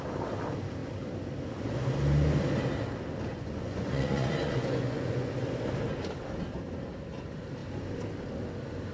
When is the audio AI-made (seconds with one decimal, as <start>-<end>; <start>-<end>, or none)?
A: 3.3-5.3